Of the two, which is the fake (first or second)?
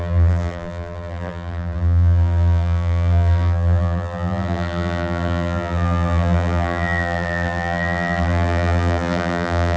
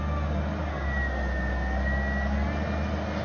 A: first